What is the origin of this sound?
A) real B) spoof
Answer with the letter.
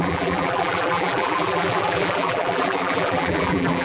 B